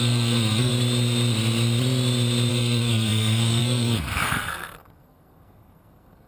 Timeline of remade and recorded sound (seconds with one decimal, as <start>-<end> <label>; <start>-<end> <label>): 0.0-0.7 remade; 0.7-2.5 recorded; 2.5-6.3 remade